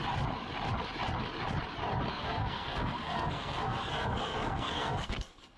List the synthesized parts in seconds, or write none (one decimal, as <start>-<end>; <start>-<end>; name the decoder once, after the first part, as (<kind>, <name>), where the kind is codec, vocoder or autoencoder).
2.1-5.6 (codec, SNAC)